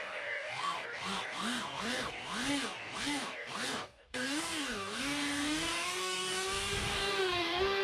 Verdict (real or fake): fake